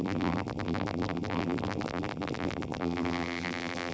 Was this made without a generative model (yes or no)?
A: no